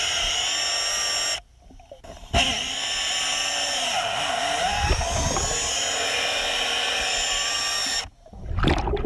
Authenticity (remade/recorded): recorded